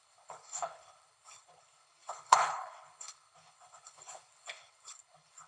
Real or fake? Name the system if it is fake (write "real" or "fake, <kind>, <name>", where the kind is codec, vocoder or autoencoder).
fake, codec, HILCodec